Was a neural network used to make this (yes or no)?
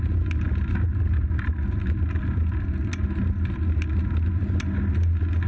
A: no